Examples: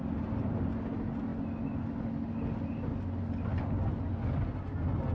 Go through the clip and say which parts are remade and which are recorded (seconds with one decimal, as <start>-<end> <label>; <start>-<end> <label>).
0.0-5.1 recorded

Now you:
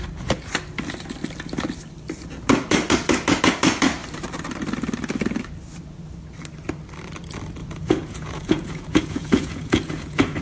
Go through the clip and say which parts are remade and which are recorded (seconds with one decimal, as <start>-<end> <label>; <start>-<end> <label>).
0.0-7.6 recorded; 7.6-10.4 remade

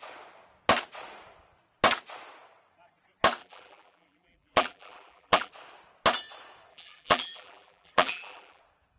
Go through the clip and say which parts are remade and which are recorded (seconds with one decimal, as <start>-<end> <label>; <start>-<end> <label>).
0.0-3.4 recorded; 3.4-5.5 remade; 5.5-6.7 recorded; 6.7-8.6 remade; 8.6-9.0 recorded